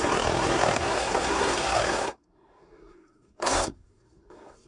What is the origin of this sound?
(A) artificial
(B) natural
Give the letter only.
A